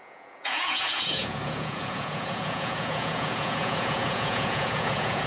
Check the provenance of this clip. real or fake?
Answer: fake